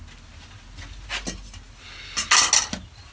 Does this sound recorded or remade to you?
recorded